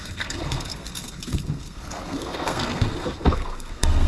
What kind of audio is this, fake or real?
fake